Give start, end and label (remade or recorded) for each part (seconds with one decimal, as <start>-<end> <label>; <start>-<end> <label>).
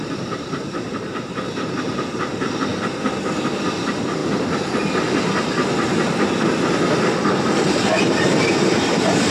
0.0-2.7 remade; 2.7-3.3 recorded; 3.3-4.2 remade; 4.2-8.0 recorded; 8.0-9.3 remade